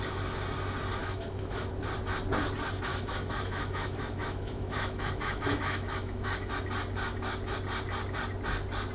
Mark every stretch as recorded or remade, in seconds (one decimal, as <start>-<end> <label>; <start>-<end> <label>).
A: 0.0-1.0 recorded; 1.0-1.7 remade; 1.7-2.9 recorded; 2.9-6.5 remade; 6.5-8.9 recorded